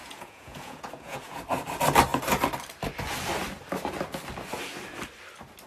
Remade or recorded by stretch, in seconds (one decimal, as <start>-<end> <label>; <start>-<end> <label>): 0.0-1.4 remade; 1.4-5.7 recorded